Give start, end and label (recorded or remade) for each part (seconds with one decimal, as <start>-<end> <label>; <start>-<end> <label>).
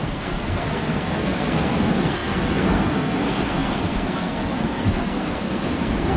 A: 0.0-6.2 remade